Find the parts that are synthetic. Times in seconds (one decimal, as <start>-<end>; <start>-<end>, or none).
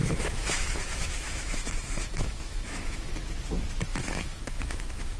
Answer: 0.0-3.1; 3.9-5.2